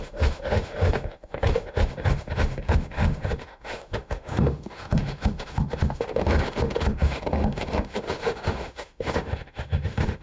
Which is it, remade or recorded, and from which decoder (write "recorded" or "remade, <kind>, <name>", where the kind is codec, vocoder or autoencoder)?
remade, autoencoder, DAC-VAE